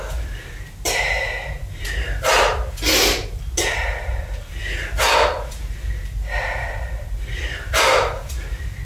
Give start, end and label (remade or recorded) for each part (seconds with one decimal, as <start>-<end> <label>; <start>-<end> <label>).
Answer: 0.0-8.8 recorded